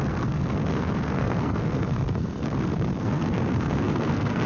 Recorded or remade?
remade